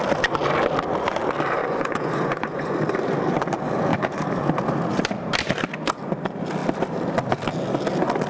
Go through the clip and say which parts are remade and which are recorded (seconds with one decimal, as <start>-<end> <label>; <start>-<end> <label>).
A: 0.0-1.6 recorded; 1.6-2.8 remade; 2.8-8.3 recorded